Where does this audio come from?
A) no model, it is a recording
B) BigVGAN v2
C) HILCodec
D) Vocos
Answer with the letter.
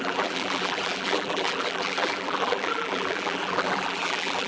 B